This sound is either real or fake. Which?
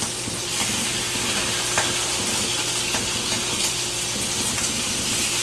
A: real